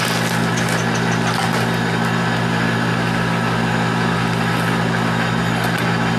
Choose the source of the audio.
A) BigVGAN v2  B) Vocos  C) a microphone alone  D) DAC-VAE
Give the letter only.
C